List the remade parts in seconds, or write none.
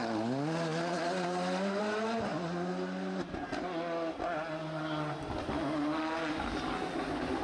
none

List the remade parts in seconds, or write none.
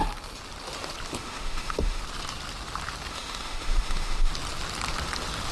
1.2-2.0 (autoencoder, DAC-VAE); 3.1-4.3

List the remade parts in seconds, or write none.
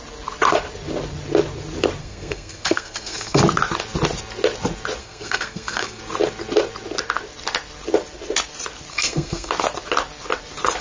2.0-3.4 (codec, SNAC); 5.0-6.0; 8.9-9.5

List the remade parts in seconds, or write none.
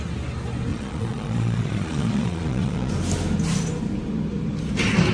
0.7-2.9 (vocoder, Vocos)